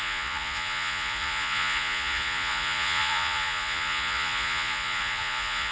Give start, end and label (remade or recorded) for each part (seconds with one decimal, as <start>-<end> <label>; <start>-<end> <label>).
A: 0.0-5.7 remade